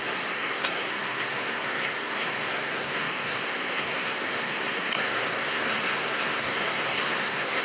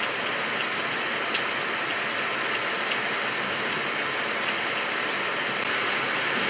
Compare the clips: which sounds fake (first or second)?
first